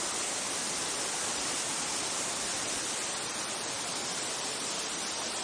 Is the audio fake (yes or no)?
no